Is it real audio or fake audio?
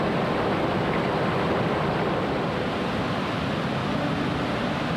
real